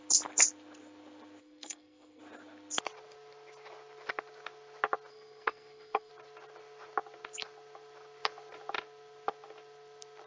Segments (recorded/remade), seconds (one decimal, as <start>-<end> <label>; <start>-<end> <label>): 0.0-1.4 recorded; 1.4-2.2 remade; 2.2-5.1 recorded; 5.1-6.1 remade; 6.1-10.3 recorded